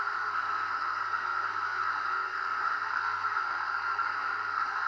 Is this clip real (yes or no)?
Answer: no